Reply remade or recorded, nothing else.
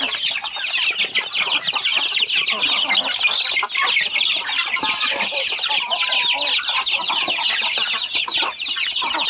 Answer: recorded